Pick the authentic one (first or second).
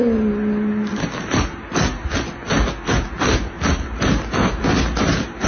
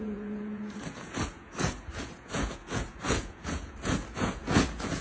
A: first